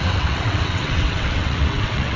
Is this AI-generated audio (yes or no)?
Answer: yes